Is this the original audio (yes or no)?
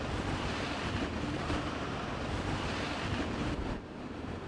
no